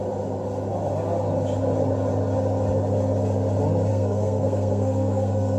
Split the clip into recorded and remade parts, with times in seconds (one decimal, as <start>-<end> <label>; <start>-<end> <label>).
0.0-3.9 recorded; 3.9-5.6 remade